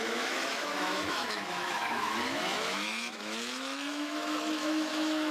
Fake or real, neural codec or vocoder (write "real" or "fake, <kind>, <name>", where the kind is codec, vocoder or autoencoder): fake, autoencoder, DAC-VAE